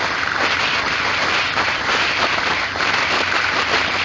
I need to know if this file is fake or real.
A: real